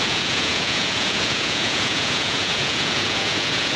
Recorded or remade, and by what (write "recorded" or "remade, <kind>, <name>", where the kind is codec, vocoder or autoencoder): remade, vocoder, Vocos